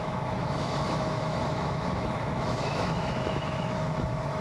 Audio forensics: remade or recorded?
remade